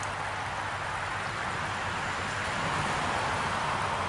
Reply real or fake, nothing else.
real